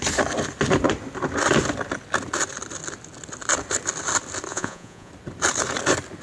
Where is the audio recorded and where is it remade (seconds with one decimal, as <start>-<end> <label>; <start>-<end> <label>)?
0.0-4.5 recorded; 4.5-5.1 remade; 5.1-6.2 recorded